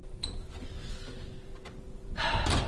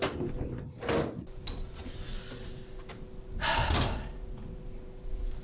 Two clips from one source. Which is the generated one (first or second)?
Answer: first